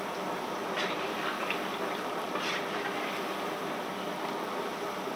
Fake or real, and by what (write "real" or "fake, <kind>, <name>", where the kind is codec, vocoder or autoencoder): real